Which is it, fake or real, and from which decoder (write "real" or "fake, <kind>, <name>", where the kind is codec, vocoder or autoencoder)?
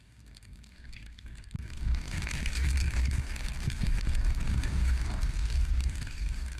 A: fake, codec, DAC